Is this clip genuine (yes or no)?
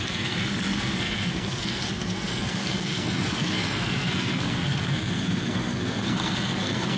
no